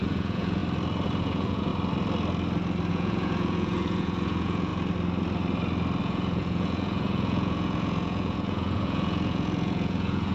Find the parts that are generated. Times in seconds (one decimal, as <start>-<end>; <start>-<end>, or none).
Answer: 0.0-0.6; 1.2-1.7; 2.9-4.7; 6.0-10.3